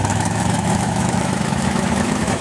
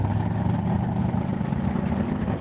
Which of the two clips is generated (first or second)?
first